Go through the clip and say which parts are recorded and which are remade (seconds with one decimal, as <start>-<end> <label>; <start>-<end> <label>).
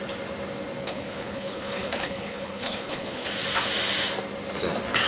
0.0-0.8 recorded; 0.8-3.3 remade; 3.3-5.1 recorded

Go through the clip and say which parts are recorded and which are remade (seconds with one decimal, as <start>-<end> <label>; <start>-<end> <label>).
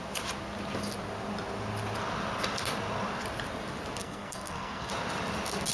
0.0-4.0 recorded; 4.0-4.9 remade; 4.9-5.7 recorded